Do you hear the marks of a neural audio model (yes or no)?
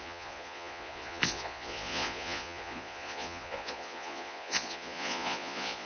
yes